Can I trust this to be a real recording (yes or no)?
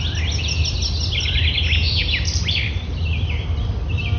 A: yes